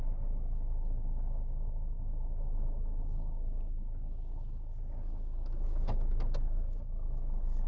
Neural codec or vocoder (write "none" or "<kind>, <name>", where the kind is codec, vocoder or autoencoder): none